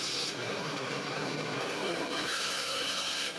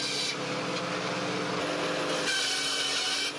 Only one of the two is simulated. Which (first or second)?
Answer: first